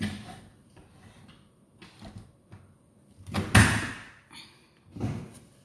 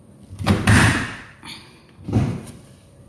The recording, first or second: first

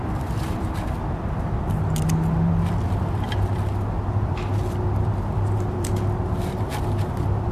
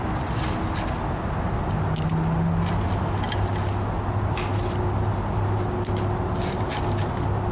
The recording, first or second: second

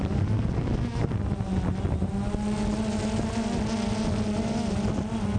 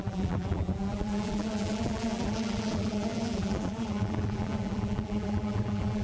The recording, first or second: first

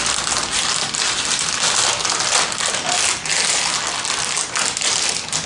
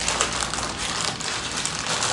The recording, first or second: first